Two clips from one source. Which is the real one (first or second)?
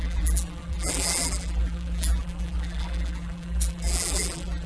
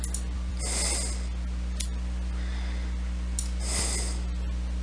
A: second